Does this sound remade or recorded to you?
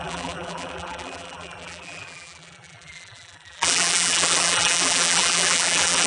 remade